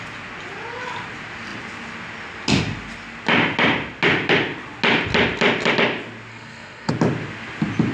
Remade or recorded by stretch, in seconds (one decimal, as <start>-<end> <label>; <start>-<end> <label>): 0.0-6.3 recorded; 6.3-6.9 remade; 6.9-7.9 recorded